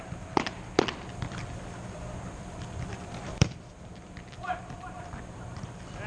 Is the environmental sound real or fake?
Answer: fake